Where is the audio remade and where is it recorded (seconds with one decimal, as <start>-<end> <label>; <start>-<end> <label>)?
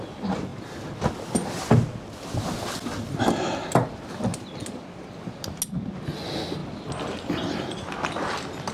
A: 0.0-8.7 recorded